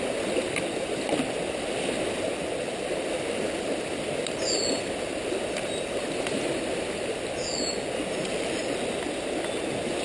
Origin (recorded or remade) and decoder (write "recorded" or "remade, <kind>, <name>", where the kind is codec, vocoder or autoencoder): recorded